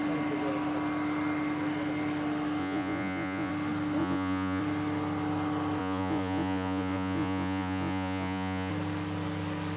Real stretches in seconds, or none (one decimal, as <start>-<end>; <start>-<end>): 0.0-2.6; 3.5-4.0; 4.6-5.8; 8.7-9.8